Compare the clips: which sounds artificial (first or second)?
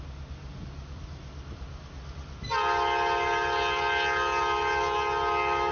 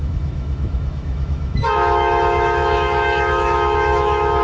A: second